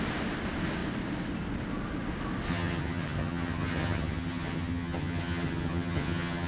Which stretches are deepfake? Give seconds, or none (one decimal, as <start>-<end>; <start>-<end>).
2.5-6.5